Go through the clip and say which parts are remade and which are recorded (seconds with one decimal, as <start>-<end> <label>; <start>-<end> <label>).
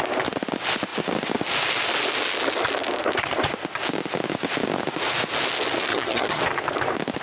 0.0-5.9 recorded; 5.9-6.4 remade; 6.4-7.2 recorded